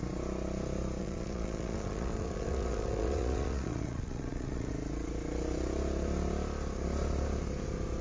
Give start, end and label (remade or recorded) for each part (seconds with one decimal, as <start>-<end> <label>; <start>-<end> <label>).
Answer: 0.0-1.0 recorded; 1.0-4.7 remade; 4.7-8.0 recorded